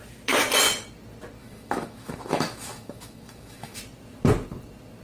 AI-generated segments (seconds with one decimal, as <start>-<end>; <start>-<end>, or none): 1.4-3.8